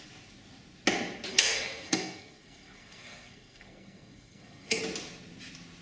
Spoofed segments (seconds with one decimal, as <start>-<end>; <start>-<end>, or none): 1.3-4.8